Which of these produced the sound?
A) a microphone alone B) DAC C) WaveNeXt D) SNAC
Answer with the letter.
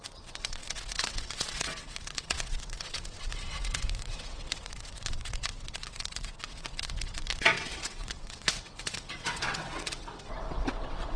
C